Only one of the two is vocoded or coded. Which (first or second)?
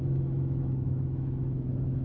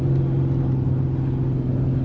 first